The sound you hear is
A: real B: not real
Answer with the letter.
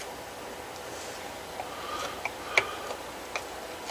A